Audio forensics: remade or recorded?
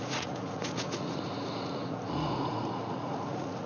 remade